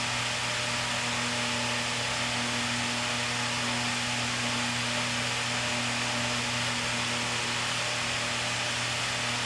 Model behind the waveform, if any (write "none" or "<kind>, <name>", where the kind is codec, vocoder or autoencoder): none